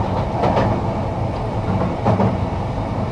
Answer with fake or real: real